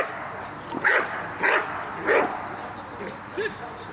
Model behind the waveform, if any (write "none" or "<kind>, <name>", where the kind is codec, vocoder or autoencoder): none